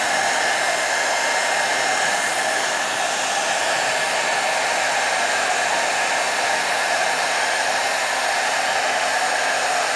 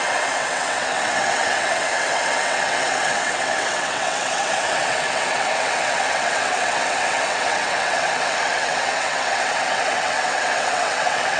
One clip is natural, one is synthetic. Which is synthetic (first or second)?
second